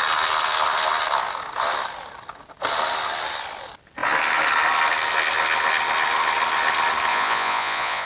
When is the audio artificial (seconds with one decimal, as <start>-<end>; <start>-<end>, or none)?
7.1-8.1